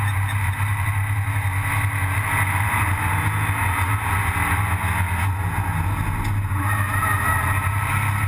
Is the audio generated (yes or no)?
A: no